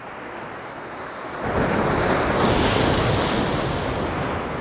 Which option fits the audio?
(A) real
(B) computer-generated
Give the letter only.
A